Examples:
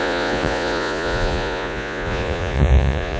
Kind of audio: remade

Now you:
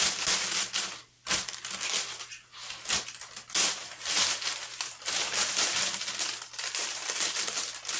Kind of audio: recorded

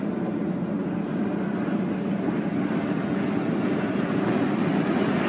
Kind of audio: recorded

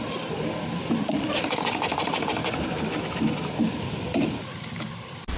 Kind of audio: remade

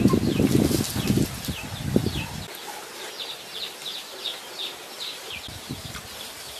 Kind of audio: recorded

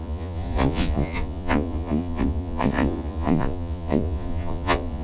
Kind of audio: remade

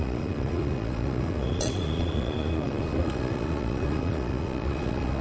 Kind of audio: remade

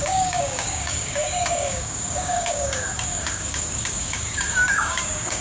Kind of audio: remade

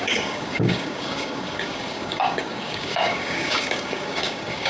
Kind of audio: remade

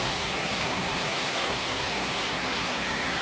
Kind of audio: remade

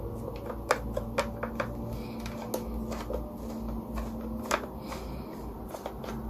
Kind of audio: recorded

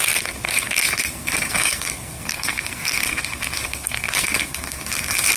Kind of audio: remade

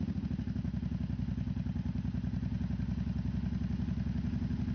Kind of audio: recorded